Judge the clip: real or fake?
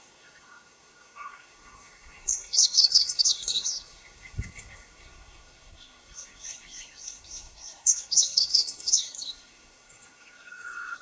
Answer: fake